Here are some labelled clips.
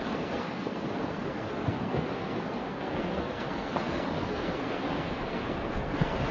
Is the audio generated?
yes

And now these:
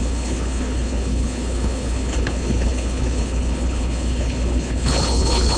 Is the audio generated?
yes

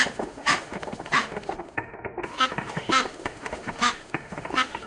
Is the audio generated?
yes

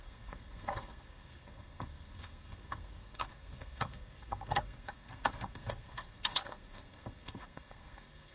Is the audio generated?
yes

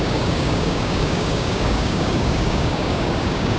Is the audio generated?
yes